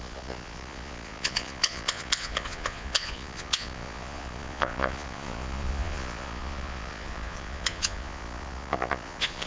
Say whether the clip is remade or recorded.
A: remade